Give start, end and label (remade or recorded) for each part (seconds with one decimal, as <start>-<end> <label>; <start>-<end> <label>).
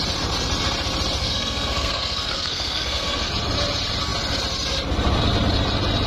0.0-1.2 recorded; 1.2-3.3 remade; 3.3-6.1 recorded